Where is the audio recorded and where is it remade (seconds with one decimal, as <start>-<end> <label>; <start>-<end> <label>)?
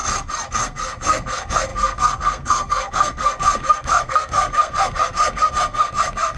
0.0-0.6 recorded; 0.6-6.4 remade